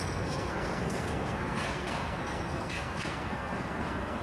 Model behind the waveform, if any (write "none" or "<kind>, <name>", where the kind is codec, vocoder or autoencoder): codec, SNAC